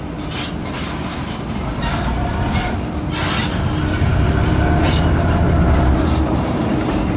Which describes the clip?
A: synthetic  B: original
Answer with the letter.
B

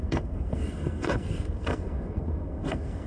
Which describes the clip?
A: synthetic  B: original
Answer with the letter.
A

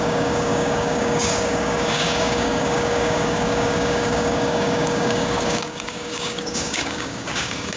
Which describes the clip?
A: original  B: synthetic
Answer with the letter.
B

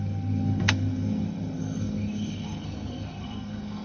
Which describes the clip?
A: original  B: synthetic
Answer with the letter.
B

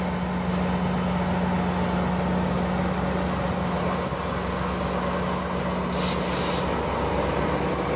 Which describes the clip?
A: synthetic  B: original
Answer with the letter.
B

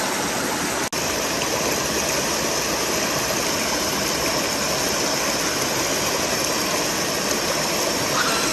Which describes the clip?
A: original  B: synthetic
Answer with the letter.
A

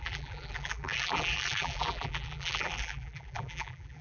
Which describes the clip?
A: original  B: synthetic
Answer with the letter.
B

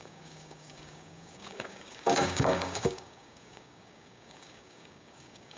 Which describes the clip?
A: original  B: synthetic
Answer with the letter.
B